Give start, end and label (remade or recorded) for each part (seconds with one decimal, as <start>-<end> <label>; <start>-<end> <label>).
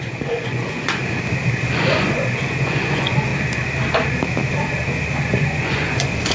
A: 0.0-1.0 remade; 1.0-1.7 recorded; 1.7-3.3 remade; 3.3-5.4 recorded; 5.4-6.3 remade